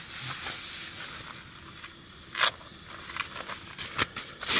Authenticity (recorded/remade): recorded